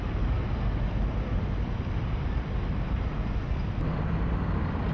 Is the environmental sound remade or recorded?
recorded